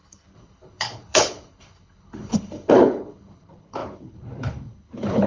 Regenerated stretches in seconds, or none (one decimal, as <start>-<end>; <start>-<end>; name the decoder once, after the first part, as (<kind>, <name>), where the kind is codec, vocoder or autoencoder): 0.0-5.3 (codec, HILCodec)